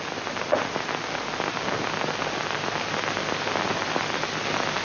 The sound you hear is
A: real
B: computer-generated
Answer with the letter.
A